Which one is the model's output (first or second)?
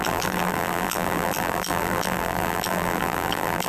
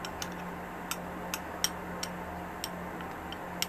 first